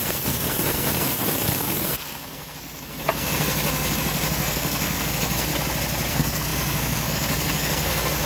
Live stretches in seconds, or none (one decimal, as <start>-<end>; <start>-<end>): 5.5-6.1